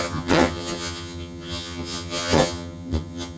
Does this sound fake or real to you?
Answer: fake